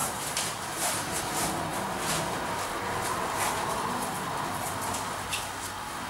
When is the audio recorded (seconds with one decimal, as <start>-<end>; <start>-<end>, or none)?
1.2-6.1